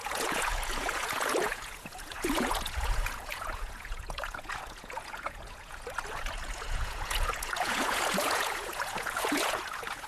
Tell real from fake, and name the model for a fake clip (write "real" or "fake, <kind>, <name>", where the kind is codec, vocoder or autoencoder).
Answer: fake, vocoder, Vocos